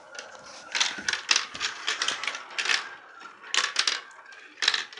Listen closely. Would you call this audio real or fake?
real